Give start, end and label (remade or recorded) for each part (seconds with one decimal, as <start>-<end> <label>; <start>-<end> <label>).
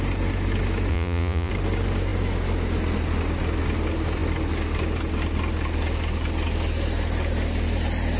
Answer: 0.0-0.9 recorded; 0.9-1.5 remade; 1.5-8.2 recorded